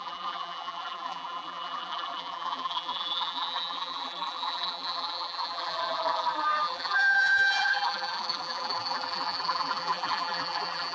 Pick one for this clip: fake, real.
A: fake